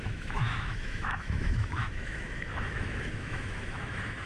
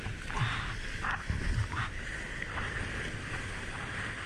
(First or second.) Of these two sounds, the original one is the second